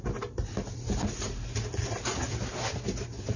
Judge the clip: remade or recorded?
recorded